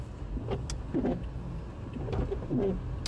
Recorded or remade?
recorded